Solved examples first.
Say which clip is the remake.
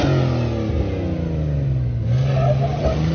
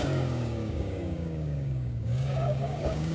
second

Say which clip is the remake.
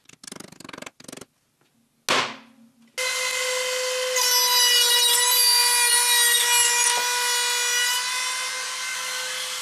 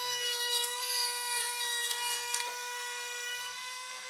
second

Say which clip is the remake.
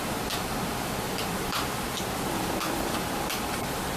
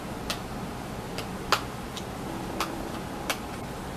first